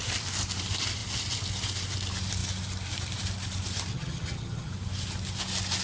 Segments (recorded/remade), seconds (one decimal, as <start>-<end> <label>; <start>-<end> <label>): 0.0-3.9 recorded; 3.9-4.7 remade; 4.7-5.8 recorded